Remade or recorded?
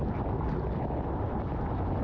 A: recorded